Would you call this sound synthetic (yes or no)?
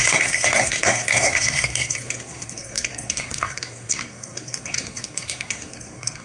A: yes